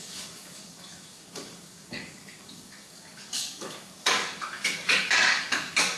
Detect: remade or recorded remade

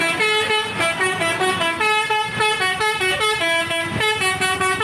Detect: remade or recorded recorded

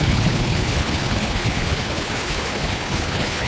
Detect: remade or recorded remade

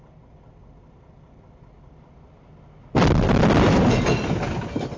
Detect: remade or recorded recorded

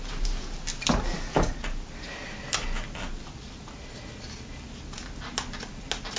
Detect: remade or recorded recorded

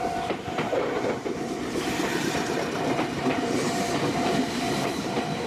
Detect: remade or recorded remade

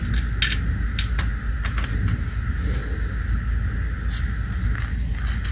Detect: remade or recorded recorded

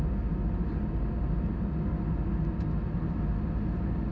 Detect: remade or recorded recorded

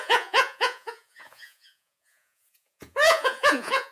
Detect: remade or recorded remade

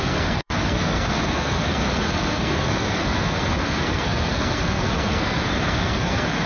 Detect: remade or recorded remade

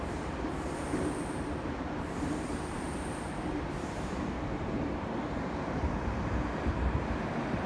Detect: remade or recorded remade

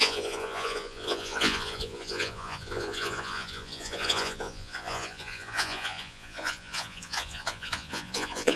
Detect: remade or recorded remade